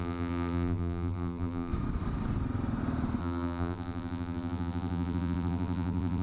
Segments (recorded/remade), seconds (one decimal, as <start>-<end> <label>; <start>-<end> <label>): 0.0-1.7 remade; 1.7-3.2 recorded; 3.2-6.2 remade